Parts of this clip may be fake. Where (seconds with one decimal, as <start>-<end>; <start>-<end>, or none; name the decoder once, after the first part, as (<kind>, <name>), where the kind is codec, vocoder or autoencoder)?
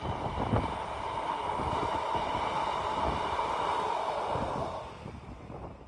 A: 1.8-2.3 (vocoder, BigVGAN v2)